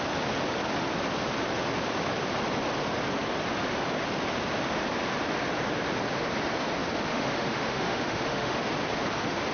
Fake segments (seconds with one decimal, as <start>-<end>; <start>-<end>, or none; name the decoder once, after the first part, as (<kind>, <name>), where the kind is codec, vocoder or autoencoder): 7.1-8.7 (autoencoder, DAC-VAE)